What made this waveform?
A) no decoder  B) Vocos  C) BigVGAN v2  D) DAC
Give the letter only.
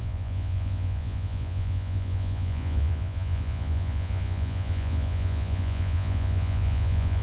B